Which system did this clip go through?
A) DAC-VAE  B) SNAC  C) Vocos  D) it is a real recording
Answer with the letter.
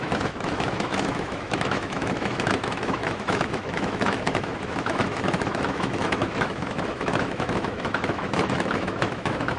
A